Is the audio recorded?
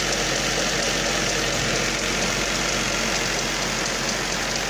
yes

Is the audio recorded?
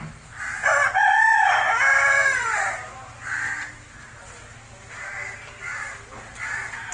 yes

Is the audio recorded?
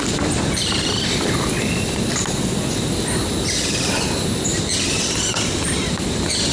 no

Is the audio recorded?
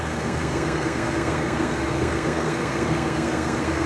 no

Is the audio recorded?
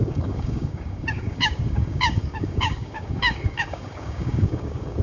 no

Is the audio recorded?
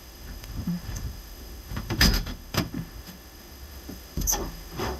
no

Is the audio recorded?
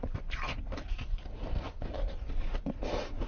yes